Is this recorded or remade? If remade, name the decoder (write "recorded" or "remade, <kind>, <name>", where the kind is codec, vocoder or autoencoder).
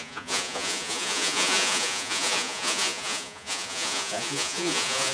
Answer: remade, vocoder, Vocos